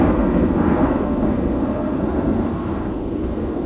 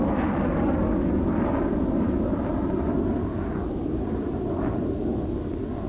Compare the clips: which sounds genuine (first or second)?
second